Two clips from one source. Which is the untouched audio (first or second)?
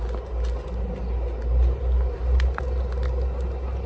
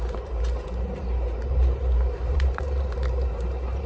first